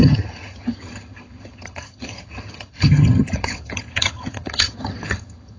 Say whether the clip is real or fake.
fake